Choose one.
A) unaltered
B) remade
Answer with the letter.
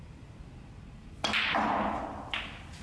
A